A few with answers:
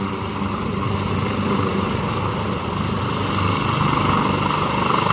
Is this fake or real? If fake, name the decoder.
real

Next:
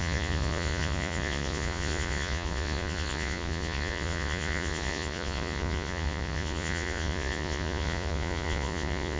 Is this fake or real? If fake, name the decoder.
fake, vocoder, Vocos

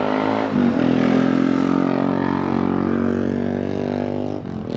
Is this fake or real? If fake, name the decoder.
real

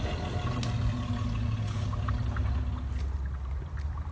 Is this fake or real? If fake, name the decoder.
real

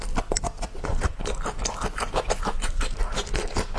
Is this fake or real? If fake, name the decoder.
real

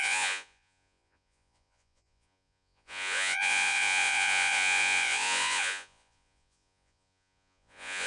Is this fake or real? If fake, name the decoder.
fake, vocoder, Vocos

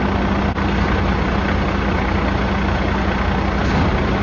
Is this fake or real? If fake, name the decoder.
real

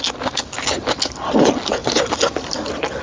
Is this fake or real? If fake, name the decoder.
real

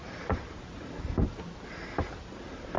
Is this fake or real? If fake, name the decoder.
real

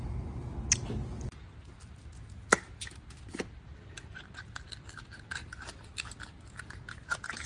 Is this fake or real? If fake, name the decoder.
real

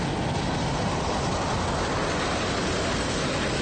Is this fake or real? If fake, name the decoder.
real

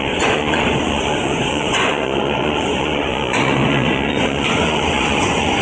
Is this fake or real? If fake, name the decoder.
fake, vocoder, Vocos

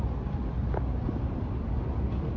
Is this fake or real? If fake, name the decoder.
real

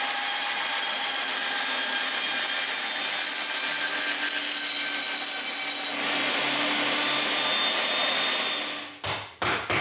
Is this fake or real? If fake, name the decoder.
real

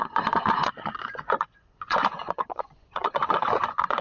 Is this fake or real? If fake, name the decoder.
fake, vocoder, Vocos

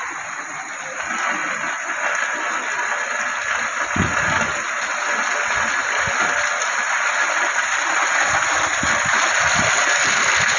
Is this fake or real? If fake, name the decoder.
real